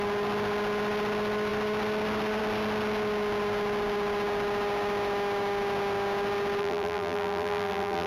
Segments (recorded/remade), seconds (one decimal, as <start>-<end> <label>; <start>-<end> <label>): 0.0-6.6 recorded; 6.6-8.1 remade